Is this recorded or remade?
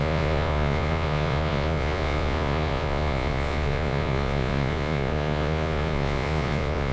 remade